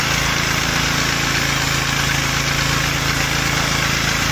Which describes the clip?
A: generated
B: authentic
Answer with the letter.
B